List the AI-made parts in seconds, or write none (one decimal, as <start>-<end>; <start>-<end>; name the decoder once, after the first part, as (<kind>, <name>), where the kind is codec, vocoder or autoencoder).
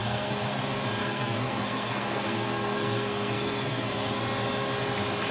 0.0-0.6 (codec, SNAC); 1.0-4.2